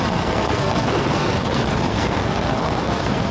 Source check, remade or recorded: remade